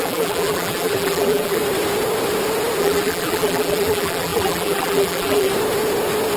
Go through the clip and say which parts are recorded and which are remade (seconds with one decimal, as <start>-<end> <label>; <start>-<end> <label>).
0.0-1.6 remade; 1.6-2.8 recorded; 2.8-5.5 remade; 5.5-6.4 recorded